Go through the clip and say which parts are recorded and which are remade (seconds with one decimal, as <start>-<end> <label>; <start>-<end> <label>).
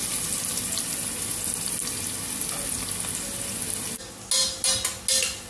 0.0-5.5 recorded